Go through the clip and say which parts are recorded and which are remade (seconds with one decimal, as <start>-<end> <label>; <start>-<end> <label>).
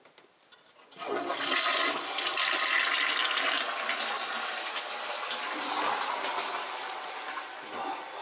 0.0-8.2 recorded